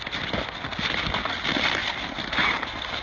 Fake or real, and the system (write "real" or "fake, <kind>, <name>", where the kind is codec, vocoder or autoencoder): real